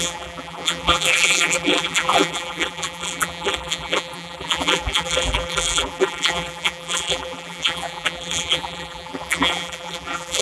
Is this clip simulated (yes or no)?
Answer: yes